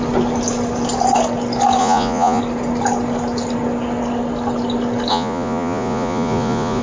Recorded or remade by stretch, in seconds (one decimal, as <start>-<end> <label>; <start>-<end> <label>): 0.0-1.8 recorded; 1.8-2.4 remade; 2.4-5.1 recorded; 5.1-6.8 remade

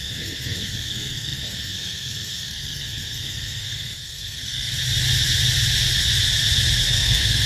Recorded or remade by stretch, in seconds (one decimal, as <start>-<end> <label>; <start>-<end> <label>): 0.0-4.7 remade; 4.7-6.9 recorded; 6.9-7.5 remade

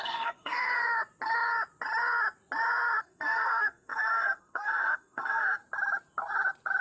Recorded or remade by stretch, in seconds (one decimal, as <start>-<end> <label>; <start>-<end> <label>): 0.0-0.8 remade; 0.8-3.0 recorded; 3.0-5.6 remade; 5.6-6.8 recorded

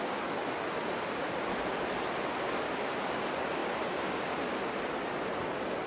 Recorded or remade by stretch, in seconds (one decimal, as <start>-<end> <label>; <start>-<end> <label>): 0.0-5.9 recorded

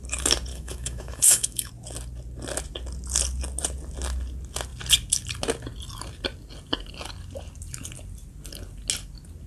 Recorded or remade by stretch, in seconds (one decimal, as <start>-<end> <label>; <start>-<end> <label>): 0.0-0.5 recorded; 0.5-1.7 remade; 1.7-9.5 recorded

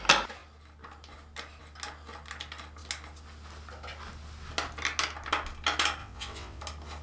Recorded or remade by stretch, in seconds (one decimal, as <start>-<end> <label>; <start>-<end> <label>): 0.0-6.0 recorded; 6.0-6.6 remade; 6.6-7.0 recorded

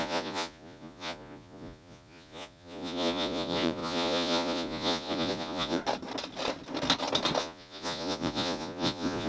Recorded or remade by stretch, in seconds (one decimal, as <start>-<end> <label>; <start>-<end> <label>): 0.0-5.8 remade; 5.8-7.4 recorded; 7.4-9.3 remade